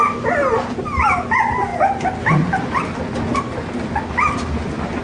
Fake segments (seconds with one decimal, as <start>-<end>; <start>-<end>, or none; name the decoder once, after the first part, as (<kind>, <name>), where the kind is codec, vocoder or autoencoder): none